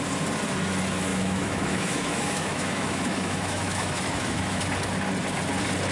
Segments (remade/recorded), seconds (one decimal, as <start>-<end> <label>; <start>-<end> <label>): 0.0-1.1 recorded; 1.1-4.6 remade; 4.6-5.9 recorded